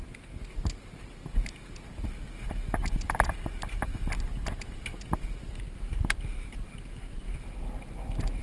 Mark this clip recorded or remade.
recorded